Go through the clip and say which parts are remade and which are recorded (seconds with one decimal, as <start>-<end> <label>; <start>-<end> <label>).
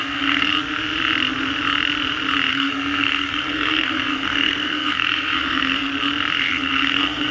0.0-0.5 remade; 0.5-2.5 recorded; 2.5-5.9 remade; 5.9-6.5 recorded; 6.5-7.3 remade